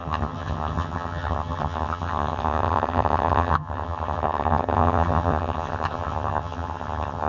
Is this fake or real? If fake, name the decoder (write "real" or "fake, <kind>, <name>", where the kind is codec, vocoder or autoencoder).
fake, vocoder, HiFi-GAN